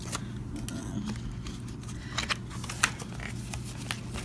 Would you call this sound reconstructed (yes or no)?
no